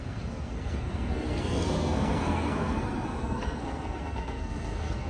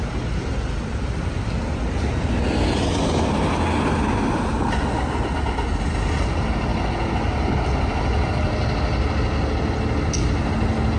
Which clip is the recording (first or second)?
second